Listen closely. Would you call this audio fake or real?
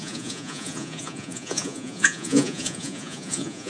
fake